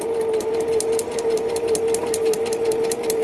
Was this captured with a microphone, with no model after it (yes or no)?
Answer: yes